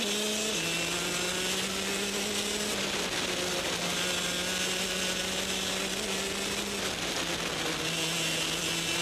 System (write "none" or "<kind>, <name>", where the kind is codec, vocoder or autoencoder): none